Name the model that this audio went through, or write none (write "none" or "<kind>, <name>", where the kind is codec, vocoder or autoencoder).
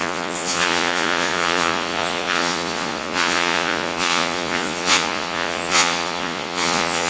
vocoder, Vocos